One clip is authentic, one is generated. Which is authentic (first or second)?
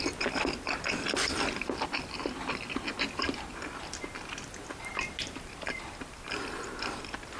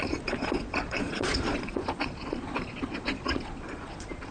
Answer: first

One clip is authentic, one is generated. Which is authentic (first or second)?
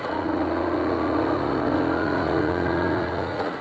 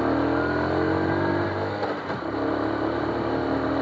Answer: second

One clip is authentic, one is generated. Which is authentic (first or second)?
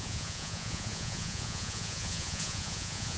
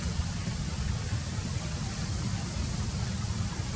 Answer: second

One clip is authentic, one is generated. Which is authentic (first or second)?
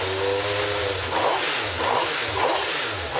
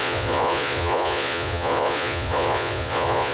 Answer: first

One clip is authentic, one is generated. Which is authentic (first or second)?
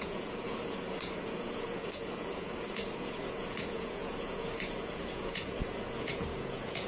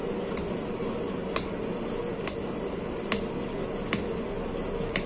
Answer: second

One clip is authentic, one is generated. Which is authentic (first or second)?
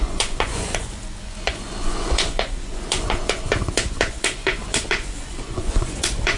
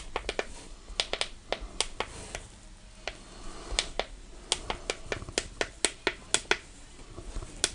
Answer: second